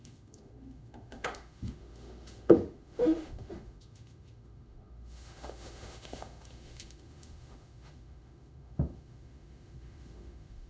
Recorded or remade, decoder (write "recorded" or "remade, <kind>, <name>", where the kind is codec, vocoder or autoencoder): remade, autoencoder, DAC-VAE